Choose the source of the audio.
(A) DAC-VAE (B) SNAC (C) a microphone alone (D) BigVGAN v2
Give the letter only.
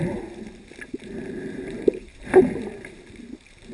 D